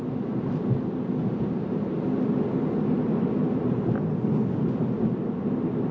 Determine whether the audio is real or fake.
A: real